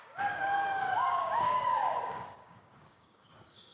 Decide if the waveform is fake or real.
fake